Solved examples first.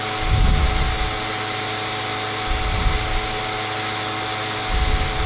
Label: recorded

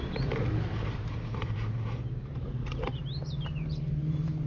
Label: remade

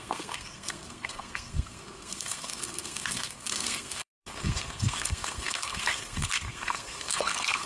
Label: remade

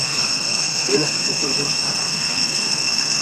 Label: remade